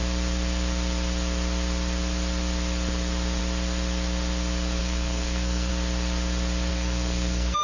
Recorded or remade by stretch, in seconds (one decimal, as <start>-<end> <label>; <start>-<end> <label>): 0.0-4.8 recorded; 4.8-5.7 remade; 5.7-6.7 recorded; 6.7-7.6 remade